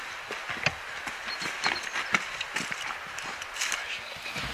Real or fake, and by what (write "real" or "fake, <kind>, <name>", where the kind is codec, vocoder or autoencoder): real